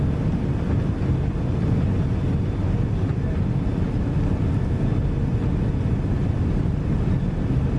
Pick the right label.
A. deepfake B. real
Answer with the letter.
B